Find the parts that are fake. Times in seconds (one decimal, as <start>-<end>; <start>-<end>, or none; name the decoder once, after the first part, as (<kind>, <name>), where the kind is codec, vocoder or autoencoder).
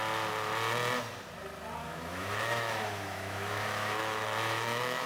1.8-5.1 (autoencoder, DAC-VAE)